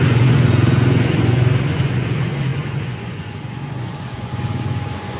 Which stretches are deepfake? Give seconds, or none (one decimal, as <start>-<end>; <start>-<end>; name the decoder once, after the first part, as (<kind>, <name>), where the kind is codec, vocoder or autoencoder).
0.0-5.2 (vocoder, Vocos)